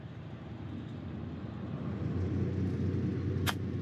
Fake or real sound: real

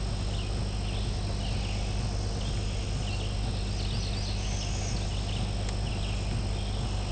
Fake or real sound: real